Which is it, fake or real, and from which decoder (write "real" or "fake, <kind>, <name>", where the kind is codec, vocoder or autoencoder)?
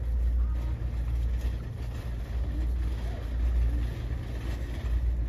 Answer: real